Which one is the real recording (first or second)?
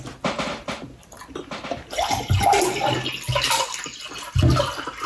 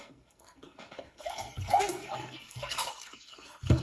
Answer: first